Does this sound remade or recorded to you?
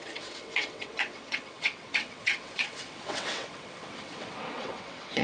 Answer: remade